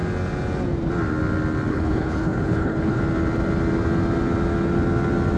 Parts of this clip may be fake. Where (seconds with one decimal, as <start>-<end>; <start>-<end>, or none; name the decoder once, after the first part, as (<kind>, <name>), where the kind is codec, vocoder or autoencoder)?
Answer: 1.7-3.0 (codec, HILCodec)